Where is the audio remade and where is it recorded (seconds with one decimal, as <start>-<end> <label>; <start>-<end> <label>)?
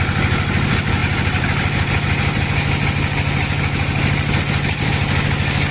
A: 0.0-5.7 recorded